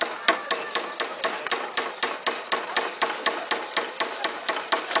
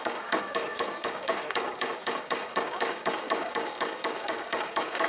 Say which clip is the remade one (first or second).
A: second